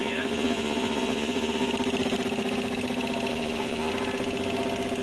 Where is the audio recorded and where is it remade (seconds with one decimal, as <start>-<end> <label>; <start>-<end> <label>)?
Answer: 0.0-1.7 remade; 1.7-3.3 recorded; 3.3-3.9 remade; 3.9-5.0 recorded